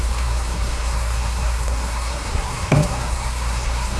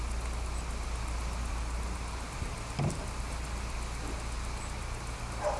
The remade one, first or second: first